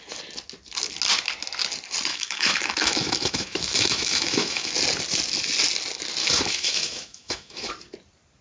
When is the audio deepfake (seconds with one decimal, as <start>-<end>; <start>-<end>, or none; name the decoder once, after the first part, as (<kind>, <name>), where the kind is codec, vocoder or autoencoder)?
2.1-4.7 (autoencoder, DAC-VAE); 6.2-7.7